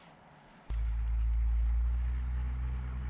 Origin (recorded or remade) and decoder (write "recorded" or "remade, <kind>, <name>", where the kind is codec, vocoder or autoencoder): recorded